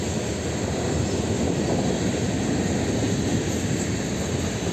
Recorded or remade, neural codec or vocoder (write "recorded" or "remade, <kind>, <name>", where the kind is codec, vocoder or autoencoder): recorded